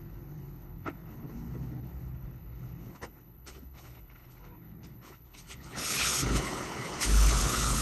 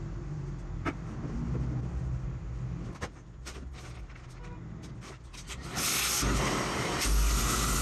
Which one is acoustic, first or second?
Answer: second